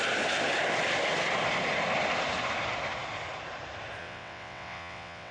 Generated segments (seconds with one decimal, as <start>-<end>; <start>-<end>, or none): 4.0-5.3